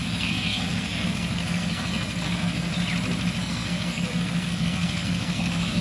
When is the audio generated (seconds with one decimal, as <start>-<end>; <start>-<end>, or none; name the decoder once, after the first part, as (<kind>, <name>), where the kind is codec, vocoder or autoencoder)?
0.0-2.7 (codec, SNAC); 3.4-5.8